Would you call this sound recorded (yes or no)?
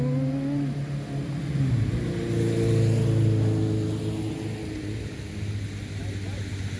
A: yes